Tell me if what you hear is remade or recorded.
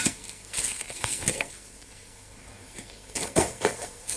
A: remade